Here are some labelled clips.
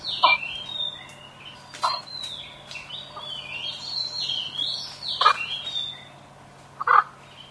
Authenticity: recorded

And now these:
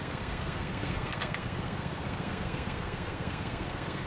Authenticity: remade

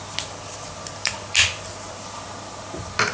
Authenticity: recorded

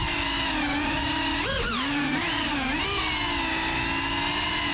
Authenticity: recorded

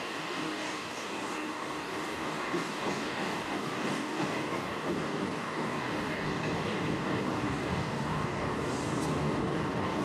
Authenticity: remade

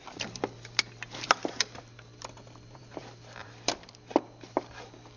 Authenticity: remade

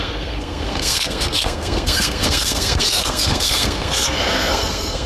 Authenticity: remade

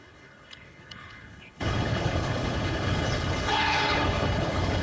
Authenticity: remade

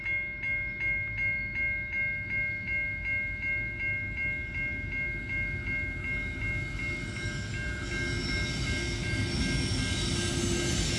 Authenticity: recorded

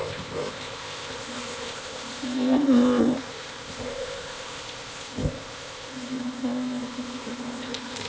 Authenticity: remade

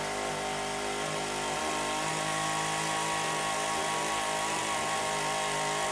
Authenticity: recorded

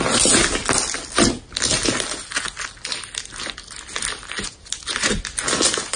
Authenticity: recorded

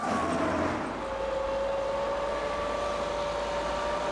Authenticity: recorded